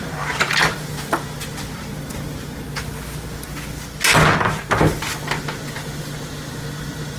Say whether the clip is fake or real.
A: real